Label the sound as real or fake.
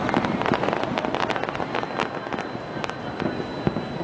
real